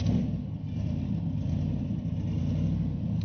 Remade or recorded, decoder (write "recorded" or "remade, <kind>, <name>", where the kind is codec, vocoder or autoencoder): recorded